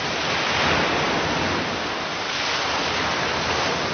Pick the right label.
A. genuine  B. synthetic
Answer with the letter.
A